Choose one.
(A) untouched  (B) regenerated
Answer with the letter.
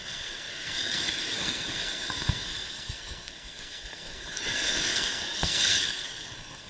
B